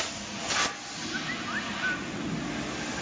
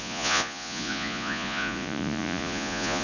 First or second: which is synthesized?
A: second